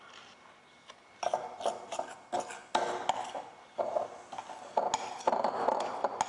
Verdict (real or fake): real